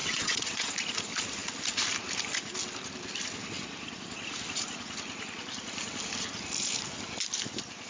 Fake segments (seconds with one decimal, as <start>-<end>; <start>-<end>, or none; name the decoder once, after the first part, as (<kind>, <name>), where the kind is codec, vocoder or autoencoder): 0.0-0.7 (vocoder, WaveNeXt)